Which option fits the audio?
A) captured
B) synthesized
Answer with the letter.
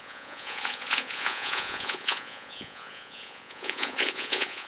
B